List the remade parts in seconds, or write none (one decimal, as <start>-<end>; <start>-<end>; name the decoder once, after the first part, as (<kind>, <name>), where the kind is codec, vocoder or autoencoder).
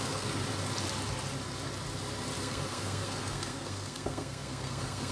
0.0-0.4 (codec, SNAC); 2.4-5.1